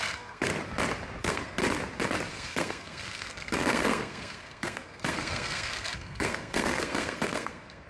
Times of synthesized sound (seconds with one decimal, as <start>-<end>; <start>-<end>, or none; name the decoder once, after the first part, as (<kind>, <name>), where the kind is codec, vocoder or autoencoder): 0.0-0.5 (codec, SNAC); 1.2-1.6; 2.3-7.9